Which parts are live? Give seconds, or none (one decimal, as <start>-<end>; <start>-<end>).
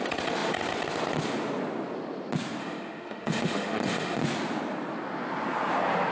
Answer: 0.0-2.6; 4.2-6.1